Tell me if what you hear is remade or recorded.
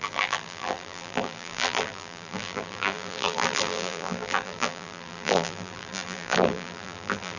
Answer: remade